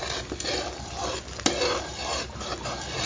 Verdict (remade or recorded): recorded